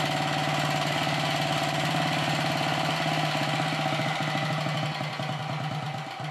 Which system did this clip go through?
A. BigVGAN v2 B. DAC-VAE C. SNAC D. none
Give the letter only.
D